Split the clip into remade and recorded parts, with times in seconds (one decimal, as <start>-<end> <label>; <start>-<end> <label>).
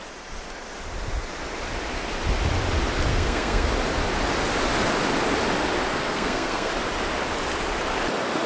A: 0.0-3.1 recorded; 3.1-3.7 remade; 3.7-5.9 recorded; 5.9-6.7 remade; 6.7-8.5 recorded